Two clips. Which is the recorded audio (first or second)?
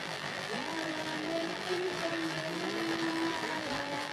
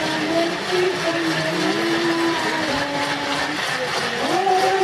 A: second